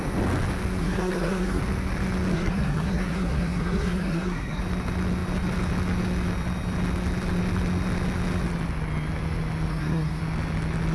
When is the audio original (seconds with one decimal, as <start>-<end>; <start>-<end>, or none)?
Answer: 0.0-0.8; 1.6-2.3; 4.6-9.7; 10.2-10.9